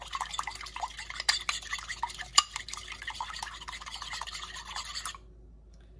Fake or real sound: real